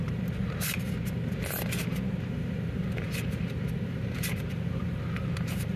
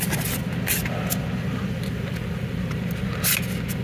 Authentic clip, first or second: second